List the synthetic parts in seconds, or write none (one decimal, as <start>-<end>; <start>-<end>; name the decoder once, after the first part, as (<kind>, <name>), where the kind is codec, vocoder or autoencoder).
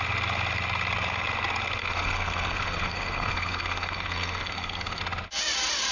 1.8-5.0 (codec, SNAC)